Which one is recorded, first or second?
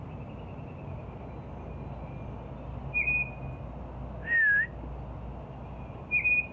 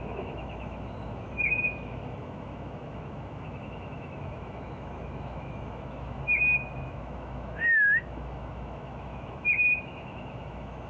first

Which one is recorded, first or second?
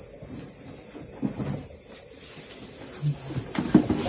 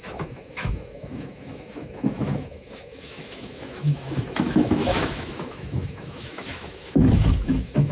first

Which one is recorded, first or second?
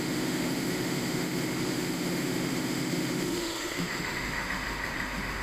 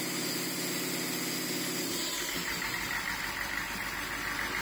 second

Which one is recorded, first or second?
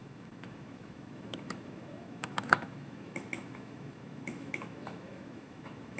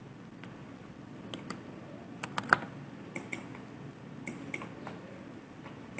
second